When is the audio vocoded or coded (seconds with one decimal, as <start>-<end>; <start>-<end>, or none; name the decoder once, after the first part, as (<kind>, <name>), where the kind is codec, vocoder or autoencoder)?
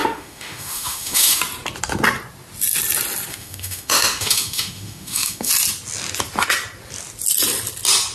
0.0-1.4 (autoencoder, DAC-VAE); 3.3-5.5